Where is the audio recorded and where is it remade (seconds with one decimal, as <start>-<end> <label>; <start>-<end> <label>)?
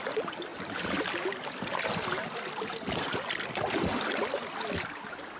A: 0.0-5.4 recorded